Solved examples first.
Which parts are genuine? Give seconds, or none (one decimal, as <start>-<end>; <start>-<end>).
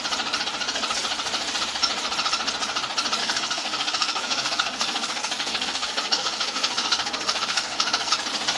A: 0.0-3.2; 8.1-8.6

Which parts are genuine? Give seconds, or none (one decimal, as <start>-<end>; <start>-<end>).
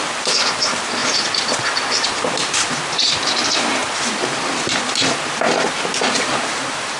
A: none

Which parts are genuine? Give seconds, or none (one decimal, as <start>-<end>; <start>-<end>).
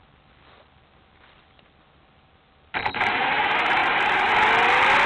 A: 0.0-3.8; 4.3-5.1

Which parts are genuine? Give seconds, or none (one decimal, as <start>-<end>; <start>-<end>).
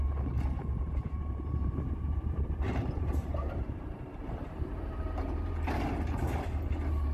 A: 0.0-1.2; 5.5-7.1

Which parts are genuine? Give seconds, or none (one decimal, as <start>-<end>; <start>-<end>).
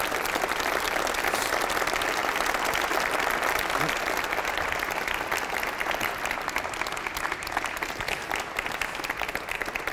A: 0.0-9.9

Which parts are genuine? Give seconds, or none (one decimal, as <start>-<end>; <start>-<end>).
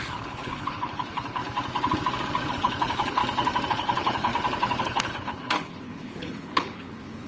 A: 1.4-2.5; 3.2-3.7; 4.3-4.8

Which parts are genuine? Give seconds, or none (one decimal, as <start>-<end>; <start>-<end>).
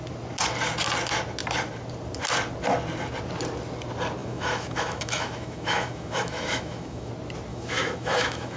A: 0.0-4.2; 7.1-7.5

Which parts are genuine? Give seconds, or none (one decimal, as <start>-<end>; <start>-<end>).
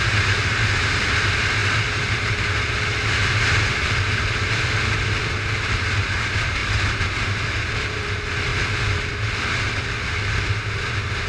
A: 0.0-11.3